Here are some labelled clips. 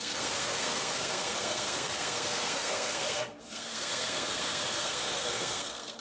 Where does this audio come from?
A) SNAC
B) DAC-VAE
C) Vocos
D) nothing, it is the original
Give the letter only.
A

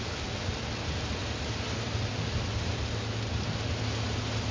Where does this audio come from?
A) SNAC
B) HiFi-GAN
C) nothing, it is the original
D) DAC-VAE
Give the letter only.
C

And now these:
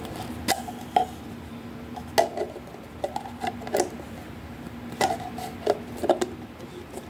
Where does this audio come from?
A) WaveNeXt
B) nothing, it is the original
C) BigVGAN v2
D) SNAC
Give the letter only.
B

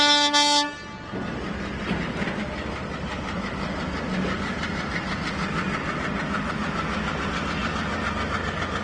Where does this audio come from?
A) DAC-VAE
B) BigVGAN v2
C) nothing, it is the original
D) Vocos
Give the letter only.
C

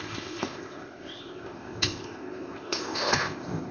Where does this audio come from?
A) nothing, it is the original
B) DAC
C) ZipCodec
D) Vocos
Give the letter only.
C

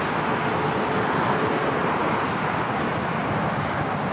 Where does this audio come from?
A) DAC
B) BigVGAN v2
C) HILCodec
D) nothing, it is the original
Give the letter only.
D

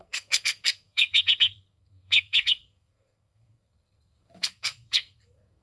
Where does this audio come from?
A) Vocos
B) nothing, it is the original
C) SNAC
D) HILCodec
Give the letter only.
C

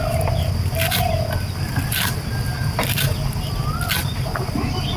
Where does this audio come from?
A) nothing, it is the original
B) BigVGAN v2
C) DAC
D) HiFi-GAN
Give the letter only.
A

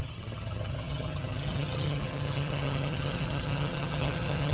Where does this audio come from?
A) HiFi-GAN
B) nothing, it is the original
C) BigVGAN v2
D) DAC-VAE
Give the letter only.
A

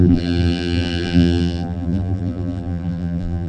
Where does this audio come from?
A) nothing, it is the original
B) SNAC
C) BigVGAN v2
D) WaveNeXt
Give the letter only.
C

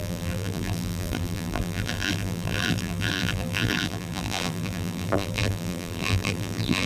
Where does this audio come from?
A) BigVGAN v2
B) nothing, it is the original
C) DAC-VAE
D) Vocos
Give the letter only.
A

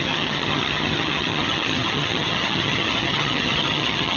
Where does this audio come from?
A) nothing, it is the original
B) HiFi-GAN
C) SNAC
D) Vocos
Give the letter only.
B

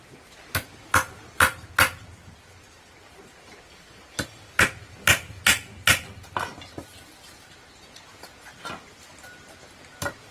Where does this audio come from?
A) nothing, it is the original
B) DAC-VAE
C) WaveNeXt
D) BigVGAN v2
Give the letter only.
A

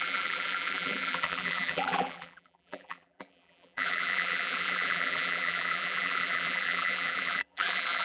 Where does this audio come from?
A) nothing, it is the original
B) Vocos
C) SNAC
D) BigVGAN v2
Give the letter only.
D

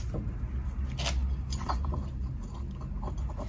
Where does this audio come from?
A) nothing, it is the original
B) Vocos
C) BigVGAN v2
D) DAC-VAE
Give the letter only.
A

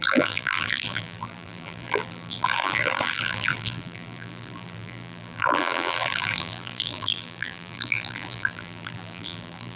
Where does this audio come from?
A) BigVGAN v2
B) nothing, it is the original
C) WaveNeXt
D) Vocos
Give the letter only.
A